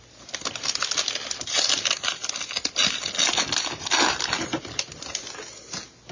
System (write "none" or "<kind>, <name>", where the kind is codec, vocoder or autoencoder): none